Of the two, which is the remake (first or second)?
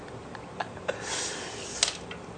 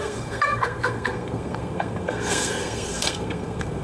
second